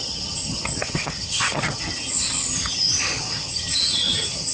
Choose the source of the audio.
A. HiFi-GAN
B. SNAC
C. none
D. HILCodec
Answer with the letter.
A